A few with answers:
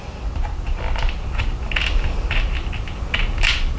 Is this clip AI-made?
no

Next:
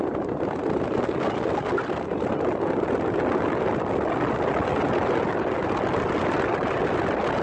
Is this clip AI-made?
no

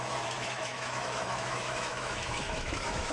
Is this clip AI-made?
yes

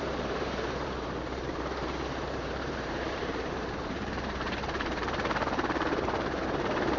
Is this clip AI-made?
yes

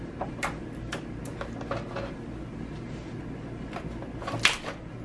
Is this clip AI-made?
no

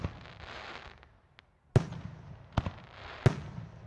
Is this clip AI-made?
no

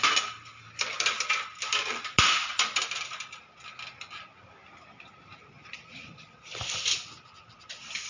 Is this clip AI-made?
yes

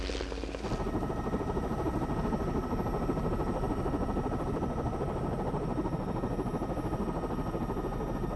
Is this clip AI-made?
no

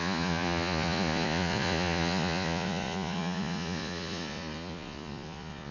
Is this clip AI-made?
yes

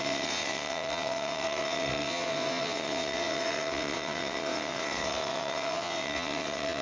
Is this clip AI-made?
yes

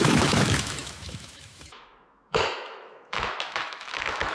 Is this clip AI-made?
yes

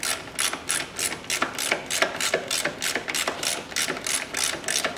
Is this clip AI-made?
no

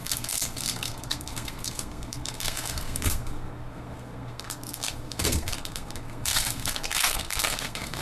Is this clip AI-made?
yes